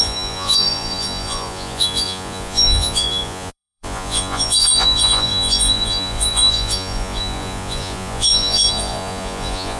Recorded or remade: remade